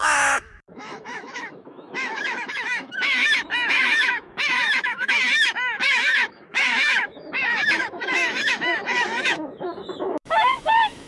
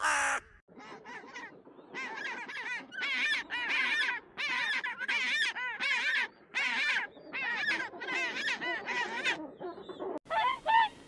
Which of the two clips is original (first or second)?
second